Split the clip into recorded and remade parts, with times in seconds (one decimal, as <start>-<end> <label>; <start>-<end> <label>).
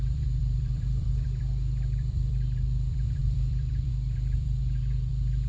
0.0-4.6 remade; 4.6-5.1 recorded; 5.1-5.5 remade